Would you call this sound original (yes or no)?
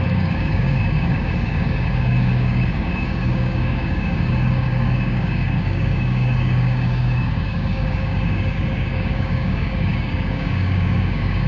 no